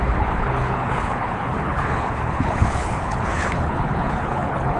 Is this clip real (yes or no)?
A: no